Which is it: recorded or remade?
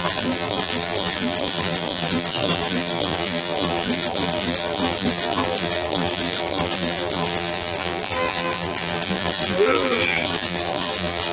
remade